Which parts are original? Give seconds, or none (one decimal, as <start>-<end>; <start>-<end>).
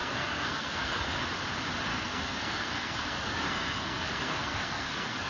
1.2-1.9